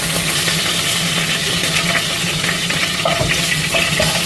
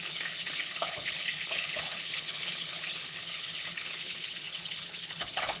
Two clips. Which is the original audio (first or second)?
first